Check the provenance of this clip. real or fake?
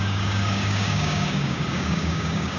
fake